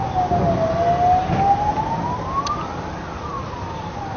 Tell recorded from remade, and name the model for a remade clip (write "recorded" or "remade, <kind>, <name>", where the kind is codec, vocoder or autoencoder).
recorded